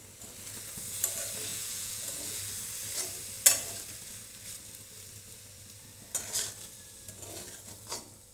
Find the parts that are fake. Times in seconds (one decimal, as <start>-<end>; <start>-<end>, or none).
1.5-2.4